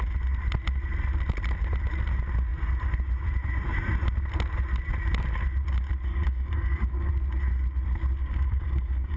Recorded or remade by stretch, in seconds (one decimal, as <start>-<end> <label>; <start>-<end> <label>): 0.0-6.1 recorded; 6.1-7.1 remade; 7.1-8.2 recorded; 8.2-9.2 remade